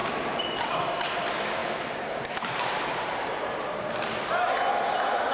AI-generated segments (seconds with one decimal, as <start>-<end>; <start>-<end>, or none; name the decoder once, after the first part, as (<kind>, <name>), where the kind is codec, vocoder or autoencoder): 0.0-0.7 (vocoder, BigVGAN v2); 1.6-4.0